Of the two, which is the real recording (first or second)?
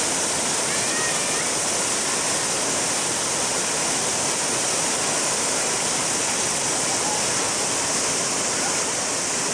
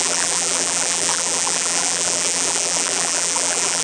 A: first